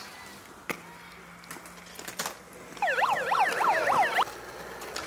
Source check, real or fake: real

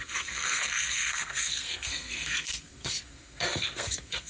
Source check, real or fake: fake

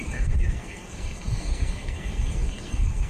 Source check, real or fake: fake